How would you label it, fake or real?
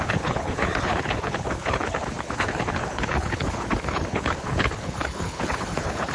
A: fake